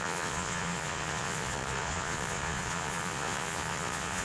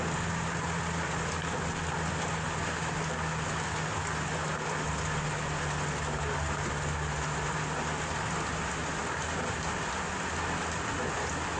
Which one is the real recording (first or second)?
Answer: second